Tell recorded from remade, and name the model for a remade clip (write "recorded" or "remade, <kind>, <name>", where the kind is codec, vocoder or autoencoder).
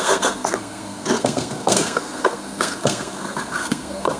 remade, codec, SNAC